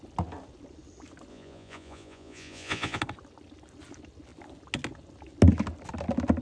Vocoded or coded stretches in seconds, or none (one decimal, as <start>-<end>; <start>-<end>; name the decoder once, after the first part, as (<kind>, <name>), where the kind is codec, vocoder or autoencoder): 1.3-3.0 (vocoder, Vocos)